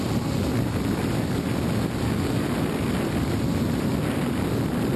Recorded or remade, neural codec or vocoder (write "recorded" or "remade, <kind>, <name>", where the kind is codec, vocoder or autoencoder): recorded